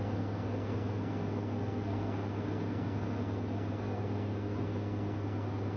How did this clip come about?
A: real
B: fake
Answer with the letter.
B